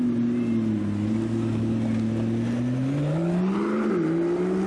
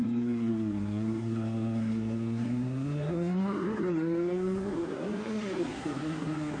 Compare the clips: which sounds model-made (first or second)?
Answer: second